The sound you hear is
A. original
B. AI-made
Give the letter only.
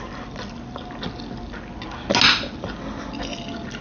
A